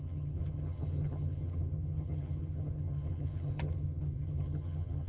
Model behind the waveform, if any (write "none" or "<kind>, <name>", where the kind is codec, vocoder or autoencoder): vocoder, HiFi-GAN